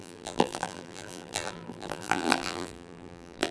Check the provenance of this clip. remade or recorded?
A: remade